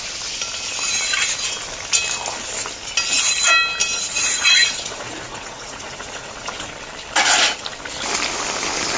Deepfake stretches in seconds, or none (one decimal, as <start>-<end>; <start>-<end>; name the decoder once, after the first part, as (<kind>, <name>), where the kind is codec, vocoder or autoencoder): 3.9-6.7 (vocoder, Vocos)